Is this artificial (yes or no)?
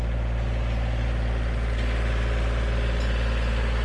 no